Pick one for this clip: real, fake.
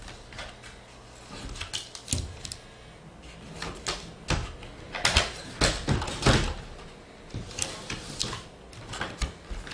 real